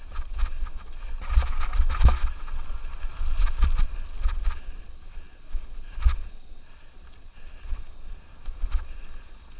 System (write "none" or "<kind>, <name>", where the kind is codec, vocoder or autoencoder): none